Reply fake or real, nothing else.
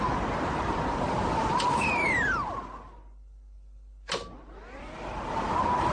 real